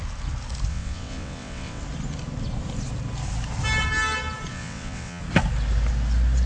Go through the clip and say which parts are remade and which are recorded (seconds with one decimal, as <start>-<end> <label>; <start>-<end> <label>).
0.0-0.7 recorded; 0.7-1.8 remade; 1.8-4.5 recorded; 4.5-5.2 remade; 5.2-6.5 recorded